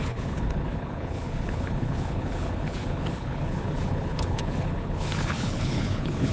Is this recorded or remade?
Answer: remade